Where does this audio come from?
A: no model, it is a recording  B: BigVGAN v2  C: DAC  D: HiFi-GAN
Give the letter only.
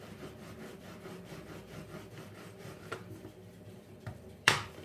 B